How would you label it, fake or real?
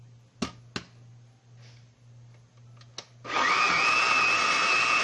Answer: real